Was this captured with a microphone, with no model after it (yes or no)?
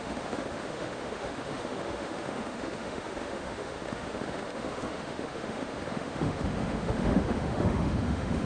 no